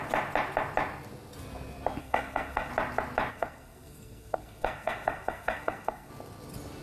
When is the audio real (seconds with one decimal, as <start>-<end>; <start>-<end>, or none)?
0.0-2.0; 2.7-3.3; 6.1-6.8

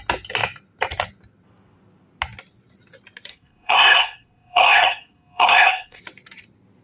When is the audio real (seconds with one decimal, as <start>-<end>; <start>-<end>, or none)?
0.0-3.3; 6.0-6.8

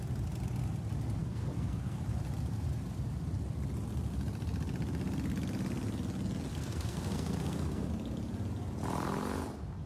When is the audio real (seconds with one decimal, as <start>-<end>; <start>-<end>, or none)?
0.0-1.2; 2.0-6.5; 7.9-9.9

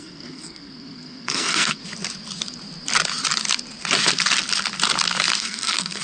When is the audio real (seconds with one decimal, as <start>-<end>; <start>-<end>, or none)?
1.8-5.4

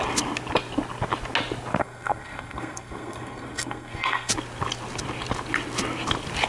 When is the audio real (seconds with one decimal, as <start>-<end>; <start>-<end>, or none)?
0.0-1.8; 4.3-6.5

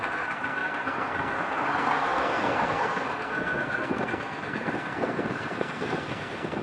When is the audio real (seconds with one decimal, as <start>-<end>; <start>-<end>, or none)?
none